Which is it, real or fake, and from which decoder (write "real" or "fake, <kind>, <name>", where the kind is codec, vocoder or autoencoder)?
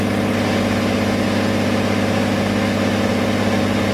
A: real